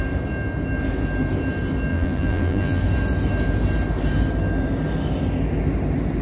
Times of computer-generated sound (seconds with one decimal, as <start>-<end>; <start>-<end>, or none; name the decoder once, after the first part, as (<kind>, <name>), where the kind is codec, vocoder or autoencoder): 1.9-2.8 (vocoder, BigVGAN v2)